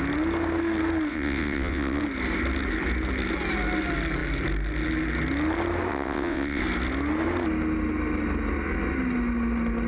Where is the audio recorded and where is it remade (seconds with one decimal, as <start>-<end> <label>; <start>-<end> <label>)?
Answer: 0.0-1.1 recorded; 1.1-2.0 remade; 2.0-5.9 recorded; 5.9-6.6 remade; 6.6-9.9 recorded